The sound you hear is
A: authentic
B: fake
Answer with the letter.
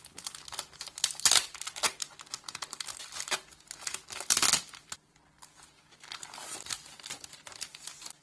A